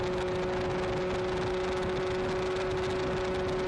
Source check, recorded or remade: recorded